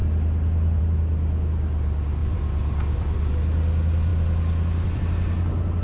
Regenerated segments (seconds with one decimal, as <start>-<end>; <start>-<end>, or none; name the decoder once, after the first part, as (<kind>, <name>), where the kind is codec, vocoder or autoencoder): 2.2-3.3 (vocoder, BigVGAN v2); 4.1-5.0